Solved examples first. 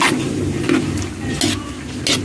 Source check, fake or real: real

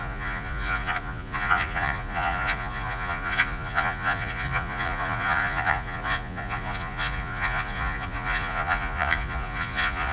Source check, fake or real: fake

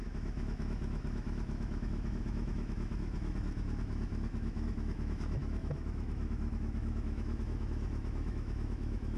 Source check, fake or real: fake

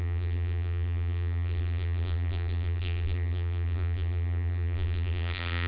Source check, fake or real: fake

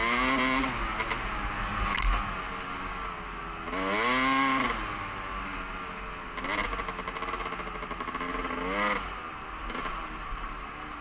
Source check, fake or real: real